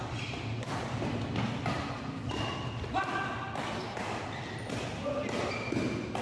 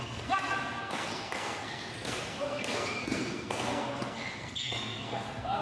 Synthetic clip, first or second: second